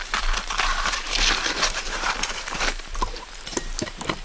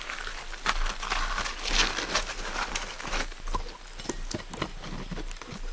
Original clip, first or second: second